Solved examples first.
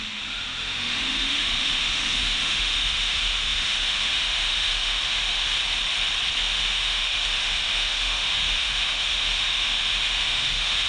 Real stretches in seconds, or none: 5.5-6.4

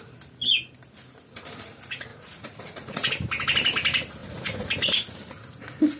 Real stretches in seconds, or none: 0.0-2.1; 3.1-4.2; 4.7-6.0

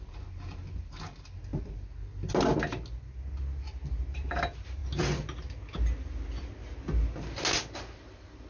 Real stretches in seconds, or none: 0.0-8.5

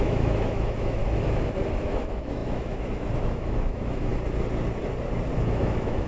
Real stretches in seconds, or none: 1.0-1.8; 4.1-5.4

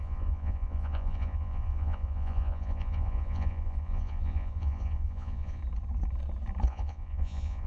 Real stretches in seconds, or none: 5.6-6.7

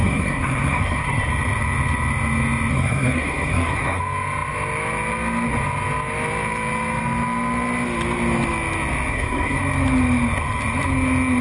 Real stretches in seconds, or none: 1.3-2.7; 4.0-9.1; 9.6-11.4